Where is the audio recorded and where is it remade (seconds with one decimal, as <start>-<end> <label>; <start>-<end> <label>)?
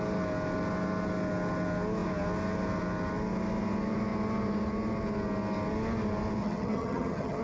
0.0-6.4 recorded; 6.4-7.4 remade